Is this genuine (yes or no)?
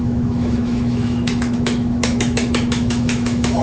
no